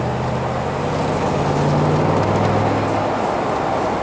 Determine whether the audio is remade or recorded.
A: recorded